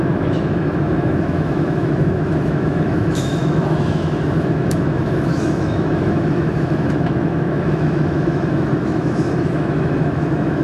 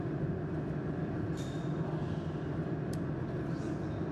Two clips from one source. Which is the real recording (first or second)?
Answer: second